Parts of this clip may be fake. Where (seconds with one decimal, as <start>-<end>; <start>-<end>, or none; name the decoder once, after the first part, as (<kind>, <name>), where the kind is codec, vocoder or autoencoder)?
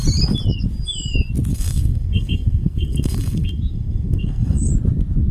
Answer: 1.5-4.7 (codec, SNAC)